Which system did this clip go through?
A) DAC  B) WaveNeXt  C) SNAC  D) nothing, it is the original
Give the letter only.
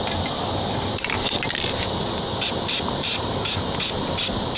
D